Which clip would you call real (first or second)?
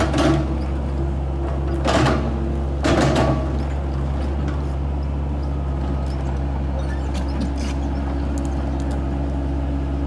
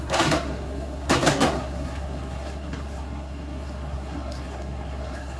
first